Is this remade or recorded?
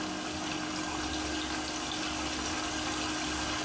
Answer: recorded